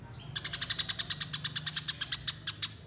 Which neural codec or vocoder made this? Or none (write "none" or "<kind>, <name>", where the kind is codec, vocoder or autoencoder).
none